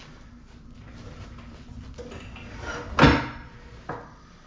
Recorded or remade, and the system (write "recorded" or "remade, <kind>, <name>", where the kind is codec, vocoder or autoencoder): recorded